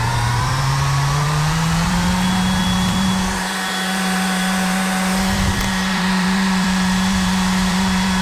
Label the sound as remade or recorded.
remade